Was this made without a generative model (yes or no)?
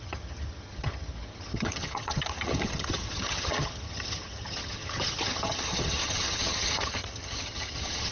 no